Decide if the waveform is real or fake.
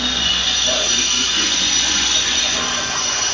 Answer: fake